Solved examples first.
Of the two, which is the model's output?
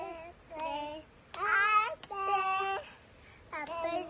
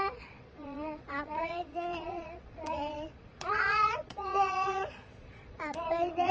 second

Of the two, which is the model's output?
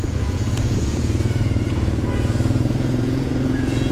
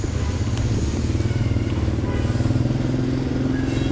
first